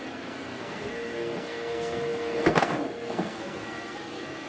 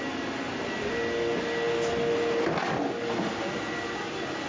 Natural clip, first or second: second